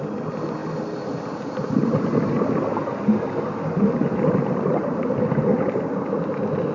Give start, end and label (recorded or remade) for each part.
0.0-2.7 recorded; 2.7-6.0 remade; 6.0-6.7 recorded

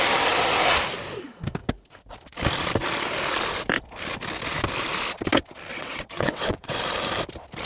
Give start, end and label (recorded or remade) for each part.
0.0-5.7 recorded; 5.7-6.8 remade; 6.8-7.7 recorded

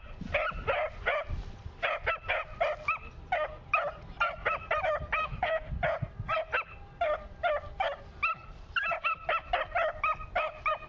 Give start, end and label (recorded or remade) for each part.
0.0-5.2 recorded; 5.2-5.7 remade; 5.7-10.9 recorded